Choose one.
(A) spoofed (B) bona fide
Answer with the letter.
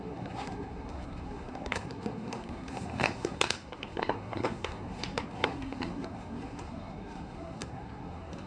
A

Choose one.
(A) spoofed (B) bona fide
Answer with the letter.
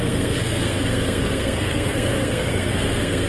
A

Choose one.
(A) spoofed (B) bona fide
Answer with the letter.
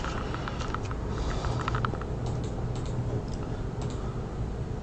B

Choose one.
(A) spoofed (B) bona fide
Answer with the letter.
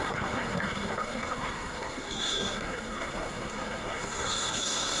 A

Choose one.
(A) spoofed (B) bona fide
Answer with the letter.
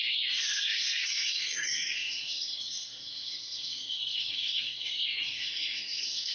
A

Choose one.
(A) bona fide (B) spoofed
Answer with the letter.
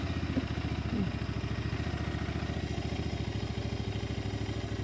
A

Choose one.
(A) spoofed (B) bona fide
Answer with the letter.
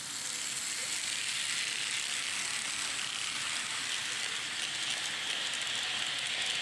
B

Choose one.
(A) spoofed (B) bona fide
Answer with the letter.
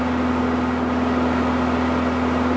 B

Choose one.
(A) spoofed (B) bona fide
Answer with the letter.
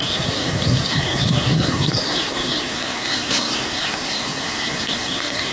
A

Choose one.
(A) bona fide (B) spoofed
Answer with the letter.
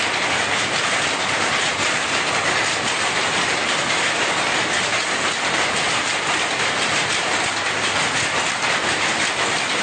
A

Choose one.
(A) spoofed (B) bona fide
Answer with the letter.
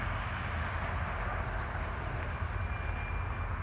B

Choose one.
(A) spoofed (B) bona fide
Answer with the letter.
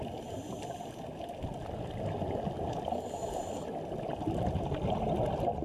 B